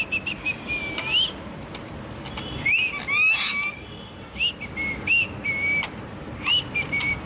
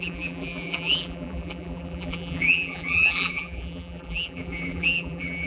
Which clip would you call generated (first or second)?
second